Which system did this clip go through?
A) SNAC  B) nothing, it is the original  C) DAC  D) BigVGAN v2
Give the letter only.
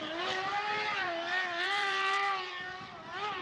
D